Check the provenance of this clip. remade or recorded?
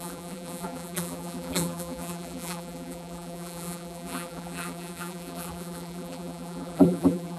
remade